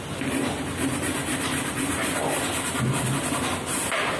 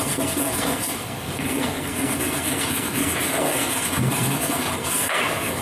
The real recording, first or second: first